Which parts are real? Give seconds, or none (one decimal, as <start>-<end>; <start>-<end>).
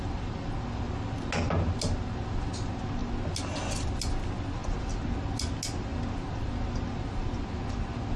0.0-8.2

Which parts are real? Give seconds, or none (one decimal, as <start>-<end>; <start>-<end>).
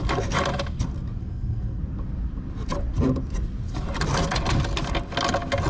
0.0-1.2; 1.8-5.7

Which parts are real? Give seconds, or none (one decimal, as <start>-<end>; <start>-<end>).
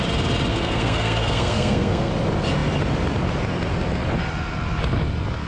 0.0-0.5; 2.1-5.5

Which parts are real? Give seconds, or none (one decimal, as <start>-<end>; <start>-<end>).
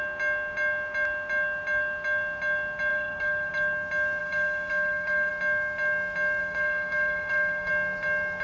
0.0-2.9; 3.5-4.2; 5.3-6.4; 7.7-8.4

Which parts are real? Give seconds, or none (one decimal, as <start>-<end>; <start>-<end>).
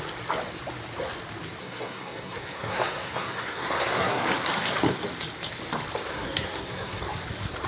0.0-1.6; 4.2-6.1; 7.0-7.7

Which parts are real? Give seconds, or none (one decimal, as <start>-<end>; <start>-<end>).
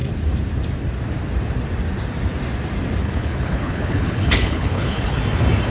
0.0-3.0; 5.2-5.7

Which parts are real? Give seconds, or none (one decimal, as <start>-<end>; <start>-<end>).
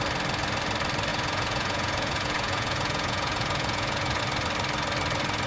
0.0-1.1; 4.2-5.5